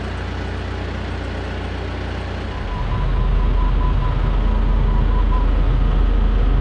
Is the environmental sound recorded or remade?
recorded